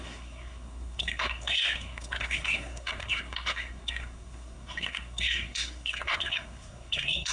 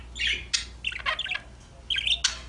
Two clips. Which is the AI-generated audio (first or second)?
first